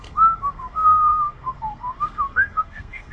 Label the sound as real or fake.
fake